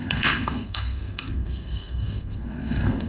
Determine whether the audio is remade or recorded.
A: remade